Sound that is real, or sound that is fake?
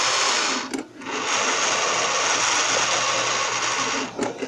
real